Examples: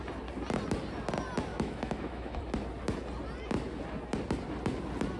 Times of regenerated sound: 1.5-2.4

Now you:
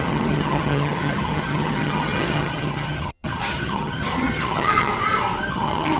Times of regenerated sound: 0.0-4.9; 5.5-6.0